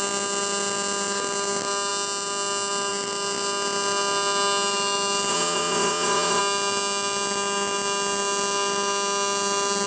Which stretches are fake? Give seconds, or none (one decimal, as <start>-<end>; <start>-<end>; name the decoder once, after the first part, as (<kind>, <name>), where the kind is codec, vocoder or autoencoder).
5.3-6.4 (vocoder, Vocos)